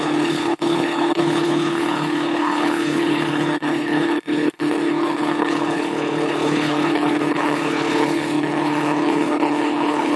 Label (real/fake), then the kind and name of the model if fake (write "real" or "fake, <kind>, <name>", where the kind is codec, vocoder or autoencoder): fake, codec, HILCodec